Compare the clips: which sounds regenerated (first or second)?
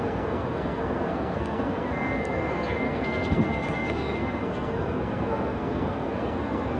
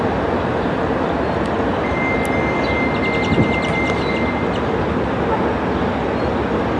first